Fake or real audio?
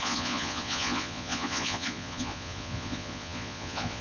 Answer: fake